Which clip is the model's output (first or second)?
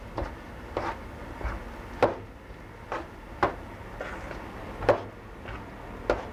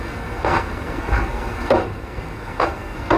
second